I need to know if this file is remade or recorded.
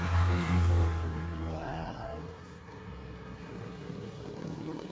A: remade